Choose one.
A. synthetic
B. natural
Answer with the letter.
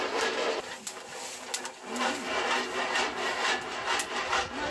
B